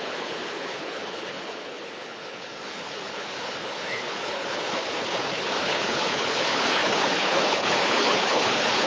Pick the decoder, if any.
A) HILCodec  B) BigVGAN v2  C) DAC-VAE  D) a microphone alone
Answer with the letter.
A